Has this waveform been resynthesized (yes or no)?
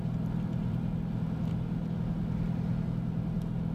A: no